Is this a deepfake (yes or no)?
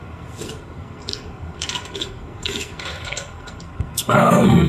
yes